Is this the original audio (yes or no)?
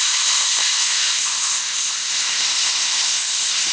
no